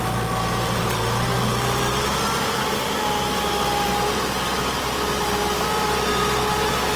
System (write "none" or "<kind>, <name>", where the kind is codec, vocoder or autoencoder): none